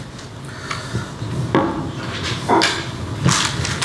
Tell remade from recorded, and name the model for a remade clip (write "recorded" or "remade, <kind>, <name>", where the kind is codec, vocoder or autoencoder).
recorded